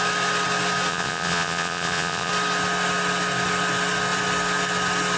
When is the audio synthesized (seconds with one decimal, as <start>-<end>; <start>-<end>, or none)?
0.9-2.3